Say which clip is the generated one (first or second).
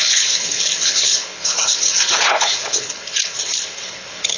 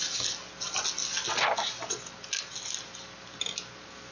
first